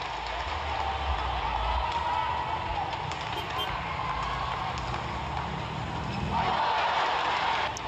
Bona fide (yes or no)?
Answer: yes